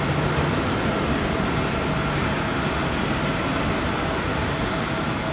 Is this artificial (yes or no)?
no